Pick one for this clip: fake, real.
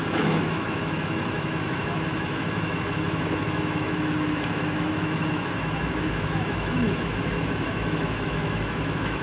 fake